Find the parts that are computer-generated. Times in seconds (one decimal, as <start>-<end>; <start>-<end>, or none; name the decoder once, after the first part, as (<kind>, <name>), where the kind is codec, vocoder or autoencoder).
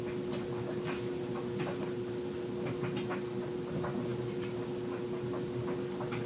none